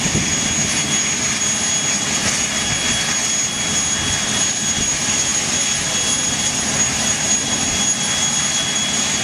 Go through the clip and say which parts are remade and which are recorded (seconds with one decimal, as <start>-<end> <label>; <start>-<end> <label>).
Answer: 0.0-9.2 recorded